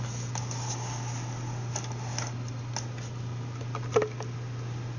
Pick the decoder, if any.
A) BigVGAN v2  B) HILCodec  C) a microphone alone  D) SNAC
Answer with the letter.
C